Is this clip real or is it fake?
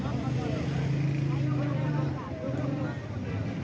real